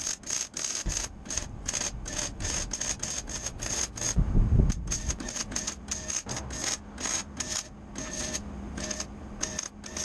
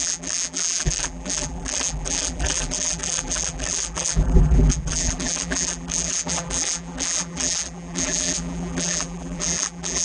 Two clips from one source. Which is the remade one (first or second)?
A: second